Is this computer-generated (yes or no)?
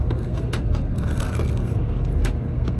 yes